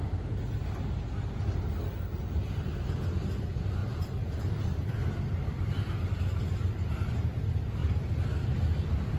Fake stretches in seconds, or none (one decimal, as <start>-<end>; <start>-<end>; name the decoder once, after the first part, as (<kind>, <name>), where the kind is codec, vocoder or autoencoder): 3.8-4.9 (vocoder, BigVGAN v2)